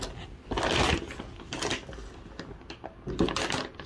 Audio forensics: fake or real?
real